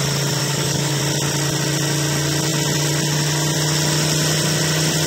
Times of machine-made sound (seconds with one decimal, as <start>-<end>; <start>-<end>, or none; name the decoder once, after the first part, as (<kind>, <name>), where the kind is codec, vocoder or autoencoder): 0.4-1.0 (codec, DAC)